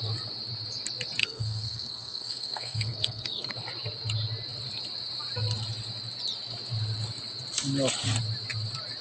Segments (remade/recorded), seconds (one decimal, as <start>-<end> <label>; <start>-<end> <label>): 0.0-1.2 recorded; 1.2-3.5 remade; 3.5-9.0 recorded